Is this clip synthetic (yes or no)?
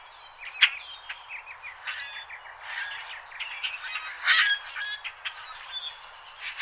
no